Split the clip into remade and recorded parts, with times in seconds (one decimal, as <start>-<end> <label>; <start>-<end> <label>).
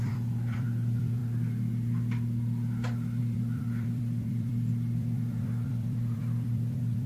0.0-1.2 remade; 1.2-3.2 recorded; 3.2-7.1 remade